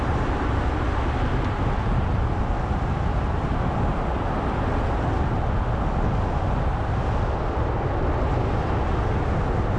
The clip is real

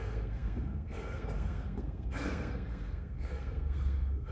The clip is fake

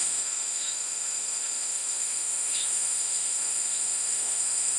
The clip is fake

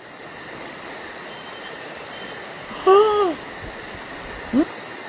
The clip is real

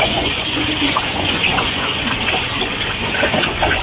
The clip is fake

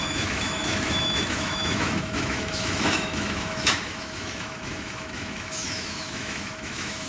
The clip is fake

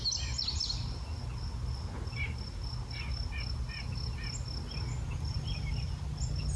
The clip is real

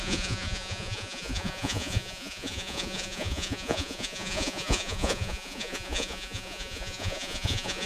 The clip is fake